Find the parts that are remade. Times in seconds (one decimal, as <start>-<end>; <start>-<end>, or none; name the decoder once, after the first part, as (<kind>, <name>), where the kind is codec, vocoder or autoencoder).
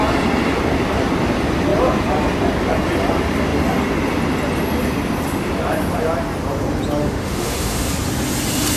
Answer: 7.0-7.9 (autoencoder, DAC-VAE)